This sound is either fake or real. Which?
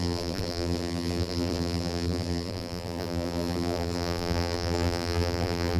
fake